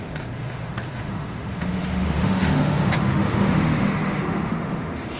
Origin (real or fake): fake